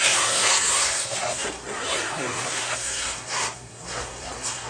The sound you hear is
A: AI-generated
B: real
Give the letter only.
A